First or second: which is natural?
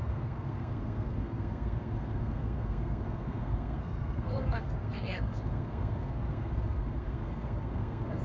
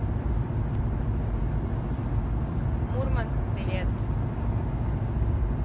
second